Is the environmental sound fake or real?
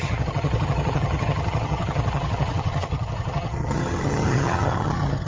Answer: fake